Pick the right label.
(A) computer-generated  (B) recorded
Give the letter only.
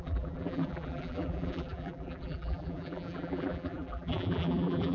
A